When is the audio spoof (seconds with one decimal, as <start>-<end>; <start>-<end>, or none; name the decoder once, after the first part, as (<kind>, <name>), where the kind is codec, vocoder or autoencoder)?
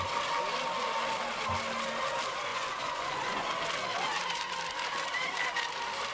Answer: 2.5-3.5 (vocoder, Vocos)